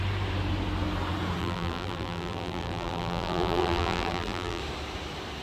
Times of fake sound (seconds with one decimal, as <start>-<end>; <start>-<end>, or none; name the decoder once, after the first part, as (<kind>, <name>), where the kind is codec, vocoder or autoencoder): 1.4-4.6 (vocoder, BigVGAN v2)